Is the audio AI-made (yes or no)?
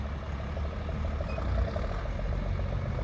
no